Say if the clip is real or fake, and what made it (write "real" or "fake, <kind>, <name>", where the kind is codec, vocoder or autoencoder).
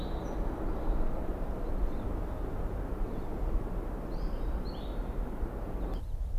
real